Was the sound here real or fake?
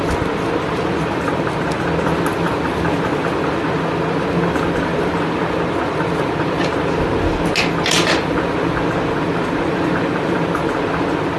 real